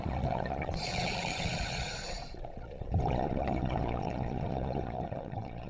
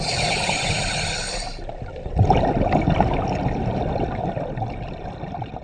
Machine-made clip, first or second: first